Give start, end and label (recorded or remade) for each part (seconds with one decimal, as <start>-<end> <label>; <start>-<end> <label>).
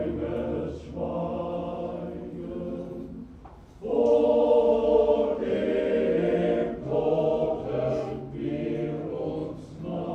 0.0-10.1 recorded